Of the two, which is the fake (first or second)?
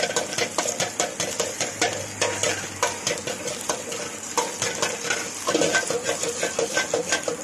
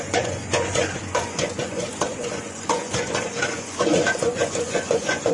second